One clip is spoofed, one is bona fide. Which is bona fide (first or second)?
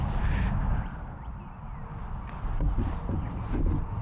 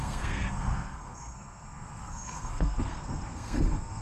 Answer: first